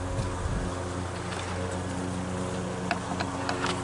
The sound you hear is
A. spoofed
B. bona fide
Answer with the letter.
B